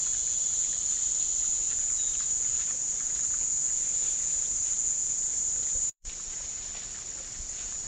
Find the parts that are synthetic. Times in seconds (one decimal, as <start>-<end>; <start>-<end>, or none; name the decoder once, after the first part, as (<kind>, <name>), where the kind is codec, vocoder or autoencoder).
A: 0.0-0.7 (vocoder, Vocos); 1.4-6.7; 7.3-7.9